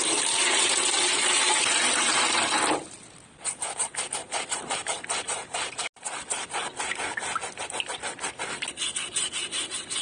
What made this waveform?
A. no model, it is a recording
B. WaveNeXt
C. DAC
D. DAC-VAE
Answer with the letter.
A